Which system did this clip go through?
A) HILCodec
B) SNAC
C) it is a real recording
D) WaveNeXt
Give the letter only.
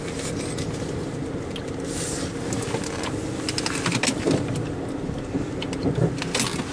C